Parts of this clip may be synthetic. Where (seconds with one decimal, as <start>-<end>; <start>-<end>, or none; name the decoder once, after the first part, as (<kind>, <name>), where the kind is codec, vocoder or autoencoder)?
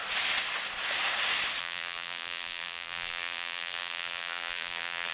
1.6-5.1 (vocoder, BigVGAN v2)